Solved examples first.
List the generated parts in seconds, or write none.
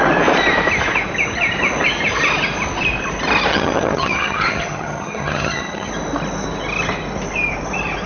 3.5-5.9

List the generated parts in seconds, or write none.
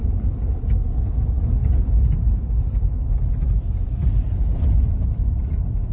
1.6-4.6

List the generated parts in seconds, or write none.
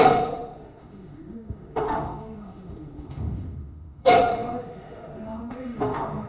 0.0-6.3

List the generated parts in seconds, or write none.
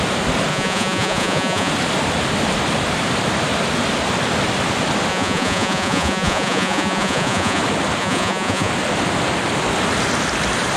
0.5-1.7; 5.1-7.6; 8.0-8.7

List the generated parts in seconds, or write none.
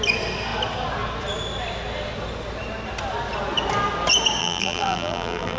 4.4-5.6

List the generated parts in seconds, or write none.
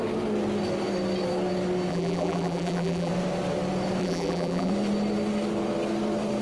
1.9-3.1; 4.0-4.7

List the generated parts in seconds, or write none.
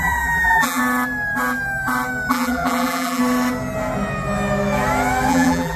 0.0-0.8; 2.3-3.2; 5.3-5.8